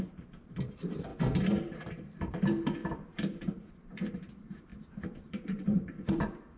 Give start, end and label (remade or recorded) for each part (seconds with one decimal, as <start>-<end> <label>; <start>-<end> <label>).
0.0-1.1 remade; 1.1-1.6 recorded; 1.6-6.6 remade